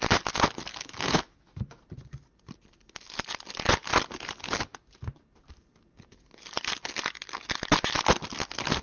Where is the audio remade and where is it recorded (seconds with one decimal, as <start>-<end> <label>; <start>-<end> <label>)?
0.0-0.7 recorded; 0.7-1.8 remade; 1.8-8.8 recorded